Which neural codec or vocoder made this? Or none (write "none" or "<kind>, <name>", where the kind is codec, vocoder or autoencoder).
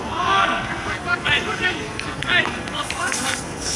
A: codec, SNAC